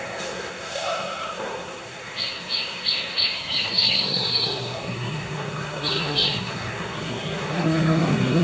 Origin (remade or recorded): remade